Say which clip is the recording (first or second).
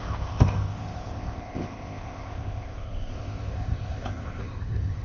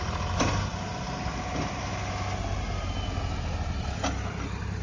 second